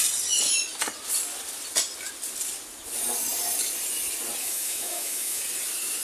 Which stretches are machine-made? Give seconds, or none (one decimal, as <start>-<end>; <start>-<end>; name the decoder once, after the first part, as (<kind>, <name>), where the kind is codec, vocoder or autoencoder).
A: 4.4-5.4 (autoencoder, DAC-VAE)